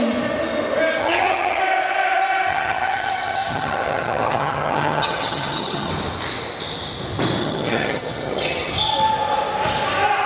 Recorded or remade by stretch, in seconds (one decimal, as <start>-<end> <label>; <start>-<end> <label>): 0.0-1.0 recorded; 1.0-1.6 remade; 1.6-2.5 recorded; 2.5-5.9 remade; 5.9-7.4 recorded; 7.4-8.7 remade; 8.7-10.3 recorded